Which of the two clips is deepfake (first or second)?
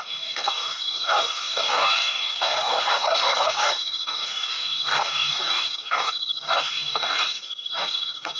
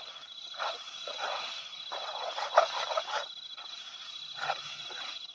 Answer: first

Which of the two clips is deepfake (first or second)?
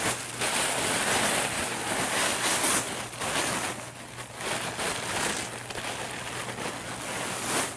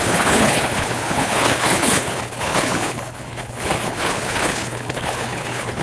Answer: second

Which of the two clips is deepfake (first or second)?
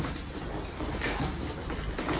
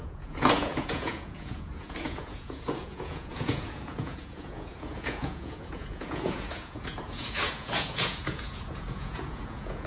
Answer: second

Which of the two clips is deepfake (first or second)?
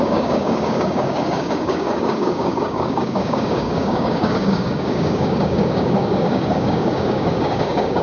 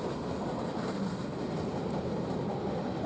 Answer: first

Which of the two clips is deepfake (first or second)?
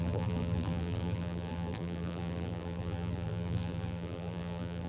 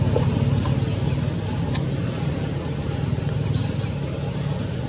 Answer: first